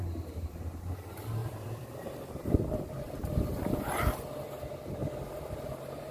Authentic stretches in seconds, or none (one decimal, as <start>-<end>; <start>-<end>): 0.0-1.4; 3.2-6.1